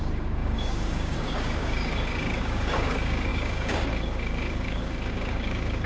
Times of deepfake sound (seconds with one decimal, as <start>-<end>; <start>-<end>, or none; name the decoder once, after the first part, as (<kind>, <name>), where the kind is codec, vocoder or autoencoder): 0.0-5.9 (codec, DAC)